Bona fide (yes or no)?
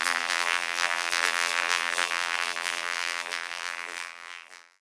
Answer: no